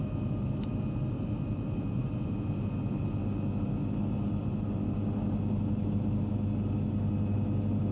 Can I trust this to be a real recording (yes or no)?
yes